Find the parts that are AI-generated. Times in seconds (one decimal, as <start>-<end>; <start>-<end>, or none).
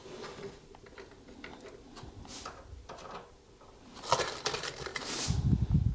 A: none